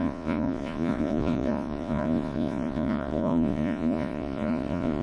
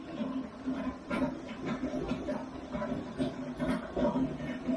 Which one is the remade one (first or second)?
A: first